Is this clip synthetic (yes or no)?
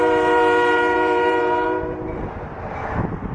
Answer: yes